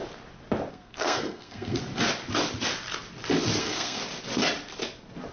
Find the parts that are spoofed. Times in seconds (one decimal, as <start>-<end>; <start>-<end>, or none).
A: 0.7-1.8; 3.6-4.0